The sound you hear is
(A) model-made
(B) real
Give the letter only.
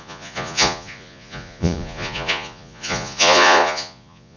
A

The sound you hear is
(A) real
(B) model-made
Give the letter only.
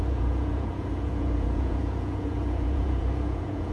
B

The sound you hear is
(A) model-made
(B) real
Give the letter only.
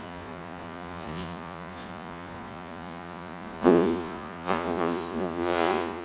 A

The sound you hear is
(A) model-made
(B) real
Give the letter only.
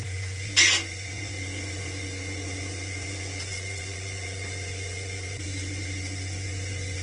A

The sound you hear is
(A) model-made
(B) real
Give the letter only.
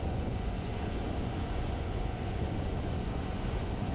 A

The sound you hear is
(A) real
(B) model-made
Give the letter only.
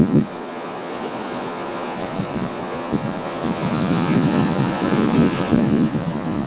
B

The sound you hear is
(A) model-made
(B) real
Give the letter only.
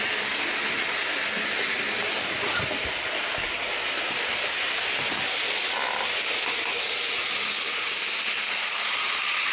B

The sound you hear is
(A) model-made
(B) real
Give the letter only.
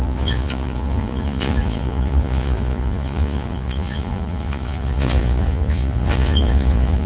A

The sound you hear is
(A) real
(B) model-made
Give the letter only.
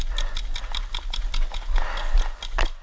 A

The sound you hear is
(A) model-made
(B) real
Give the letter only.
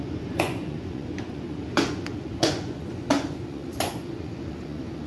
A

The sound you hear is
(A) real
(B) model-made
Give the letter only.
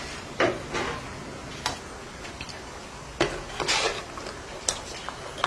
A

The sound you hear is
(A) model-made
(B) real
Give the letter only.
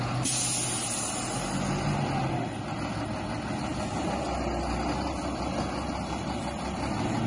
B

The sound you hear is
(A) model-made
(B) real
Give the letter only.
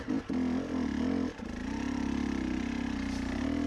B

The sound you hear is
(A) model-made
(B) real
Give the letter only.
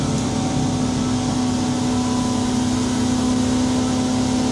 B